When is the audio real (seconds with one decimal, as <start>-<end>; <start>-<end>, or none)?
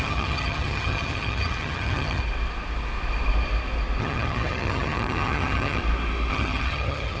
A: 2.2-4.0; 5.8-6.3